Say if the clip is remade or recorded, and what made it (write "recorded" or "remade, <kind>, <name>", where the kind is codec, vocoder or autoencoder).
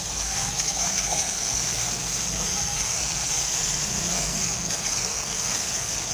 remade, codec, SNAC